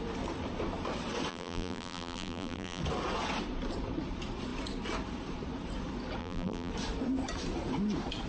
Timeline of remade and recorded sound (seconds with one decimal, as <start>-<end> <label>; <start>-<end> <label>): 0.0-1.3 recorded; 1.3-2.8 remade; 2.8-6.2 recorded; 6.2-6.7 remade; 6.7-8.3 recorded

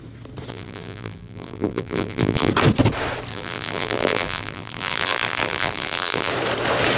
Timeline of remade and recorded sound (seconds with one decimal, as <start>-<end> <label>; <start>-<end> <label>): 0.0-0.5 recorded; 0.5-2.5 remade; 2.5-3.3 recorded; 3.3-6.3 remade; 6.3-7.0 recorded

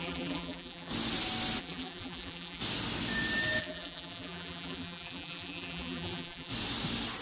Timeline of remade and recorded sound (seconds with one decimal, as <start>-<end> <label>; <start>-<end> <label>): 0.0-0.9 remade; 0.9-1.6 recorded; 1.6-2.6 remade; 2.6-3.6 recorded; 3.6-6.5 remade; 6.5-7.2 recorded

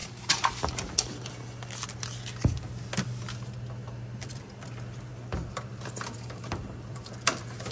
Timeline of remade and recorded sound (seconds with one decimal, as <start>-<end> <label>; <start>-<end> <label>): 0.0-4.2 recorded; 4.2-5.1 remade; 5.1-5.7 recorded; 5.7-7.7 remade

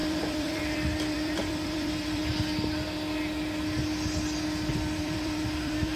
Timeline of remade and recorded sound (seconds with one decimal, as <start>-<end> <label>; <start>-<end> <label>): 0.0-2.2 remade; 2.2-4.7 recorded; 4.7-6.0 remade